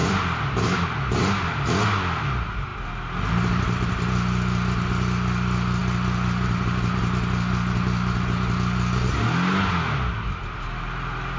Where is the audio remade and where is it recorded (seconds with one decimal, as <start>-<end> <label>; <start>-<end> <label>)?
0.0-1.5 remade; 1.5-11.4 recorded